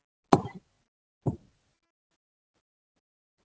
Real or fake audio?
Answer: real